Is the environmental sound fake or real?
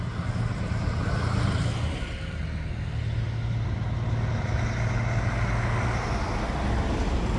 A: real